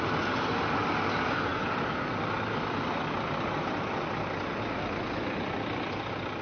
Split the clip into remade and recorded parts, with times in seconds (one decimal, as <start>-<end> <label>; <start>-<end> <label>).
0.0-6.4 recorded